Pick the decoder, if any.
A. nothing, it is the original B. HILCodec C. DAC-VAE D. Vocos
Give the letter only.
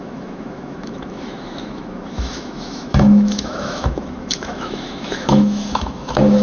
C